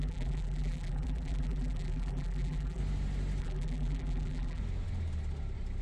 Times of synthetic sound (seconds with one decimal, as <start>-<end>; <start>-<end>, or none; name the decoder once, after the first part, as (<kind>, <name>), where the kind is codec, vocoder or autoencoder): 0.0-2.8 (vocoder, BigVGAN v2); 3.4-4.6